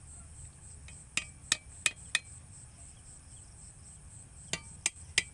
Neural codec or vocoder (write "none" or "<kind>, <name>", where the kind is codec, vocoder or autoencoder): none